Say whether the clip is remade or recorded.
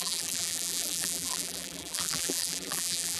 remade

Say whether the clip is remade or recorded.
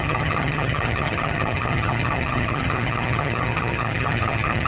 remade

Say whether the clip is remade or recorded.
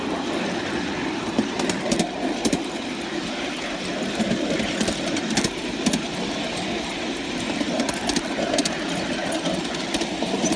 recorded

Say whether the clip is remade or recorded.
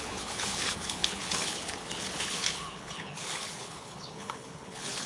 remade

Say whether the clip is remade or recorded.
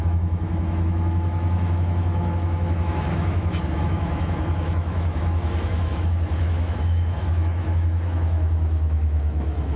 remade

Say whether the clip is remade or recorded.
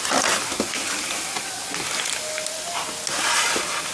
recorded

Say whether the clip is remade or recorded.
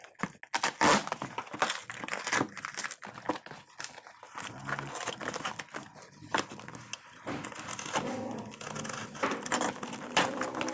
recorded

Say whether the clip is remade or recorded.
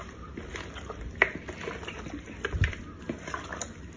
recorded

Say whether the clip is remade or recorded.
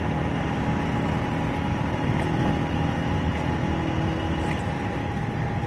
recorded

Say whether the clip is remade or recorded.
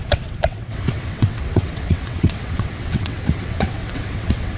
remade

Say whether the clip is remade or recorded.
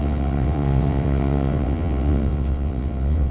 remade